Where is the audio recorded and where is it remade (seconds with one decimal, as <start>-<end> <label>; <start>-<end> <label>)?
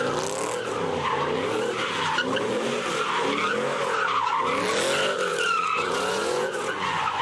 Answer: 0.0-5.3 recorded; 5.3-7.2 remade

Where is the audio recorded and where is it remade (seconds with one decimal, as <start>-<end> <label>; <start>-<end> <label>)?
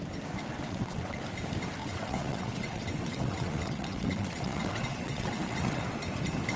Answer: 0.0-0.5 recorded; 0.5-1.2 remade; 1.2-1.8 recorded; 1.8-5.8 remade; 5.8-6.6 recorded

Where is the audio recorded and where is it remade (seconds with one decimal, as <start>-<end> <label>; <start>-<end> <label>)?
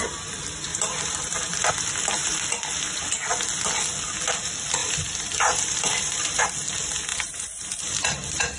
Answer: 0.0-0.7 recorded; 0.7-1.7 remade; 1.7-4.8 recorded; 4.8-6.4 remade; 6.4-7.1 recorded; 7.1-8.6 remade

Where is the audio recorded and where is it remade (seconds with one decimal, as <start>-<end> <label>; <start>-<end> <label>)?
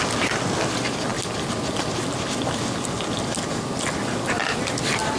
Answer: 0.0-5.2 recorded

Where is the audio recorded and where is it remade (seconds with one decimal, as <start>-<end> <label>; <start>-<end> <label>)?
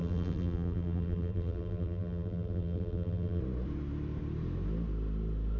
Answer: 0.0-3.4 remade; 3.4-5.6 recorded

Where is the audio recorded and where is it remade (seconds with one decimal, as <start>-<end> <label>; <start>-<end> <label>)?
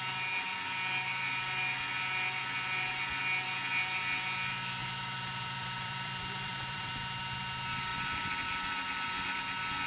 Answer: 0.0-4.8 recorded; 4.8-6.9 remade; 6.9-7.9 recorded; 7.9-9.4 remade; 9.4-9.9 recorded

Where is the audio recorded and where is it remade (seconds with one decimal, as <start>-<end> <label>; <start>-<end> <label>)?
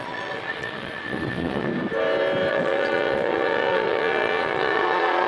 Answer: 0.0-1.7 remade; 1.7-2.5 recorded; 2.5-5.3 remade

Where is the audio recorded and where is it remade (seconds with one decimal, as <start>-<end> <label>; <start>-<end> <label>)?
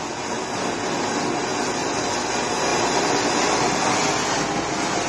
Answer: 0.0-1.5 recorded; 1.5-2.3 remade; 2.3-5.1 recorded